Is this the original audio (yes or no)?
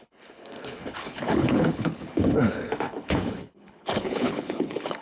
no